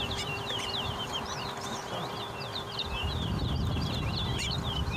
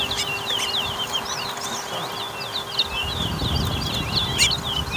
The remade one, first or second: first